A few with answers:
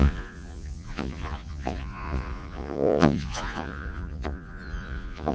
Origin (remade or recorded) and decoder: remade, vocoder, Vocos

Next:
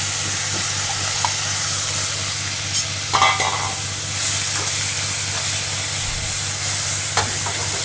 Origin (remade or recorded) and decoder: recorded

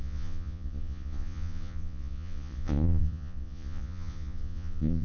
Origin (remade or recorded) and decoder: remade, vocoder, Vocos